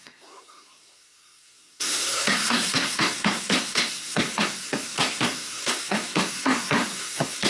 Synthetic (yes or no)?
yes